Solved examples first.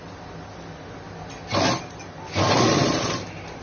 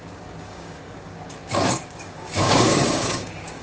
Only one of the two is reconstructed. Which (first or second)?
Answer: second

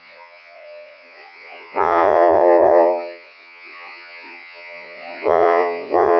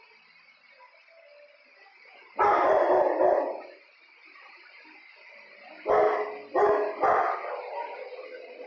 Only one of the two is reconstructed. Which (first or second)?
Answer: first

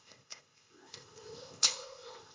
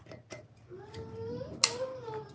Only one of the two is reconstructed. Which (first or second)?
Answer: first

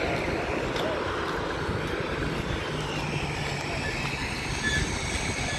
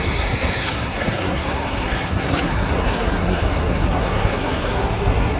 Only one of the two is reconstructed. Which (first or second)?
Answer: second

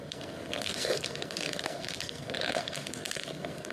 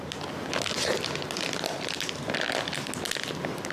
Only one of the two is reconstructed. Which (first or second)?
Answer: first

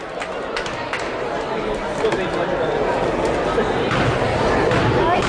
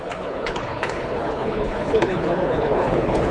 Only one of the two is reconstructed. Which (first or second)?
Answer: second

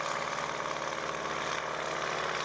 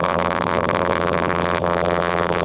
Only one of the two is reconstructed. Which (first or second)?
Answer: second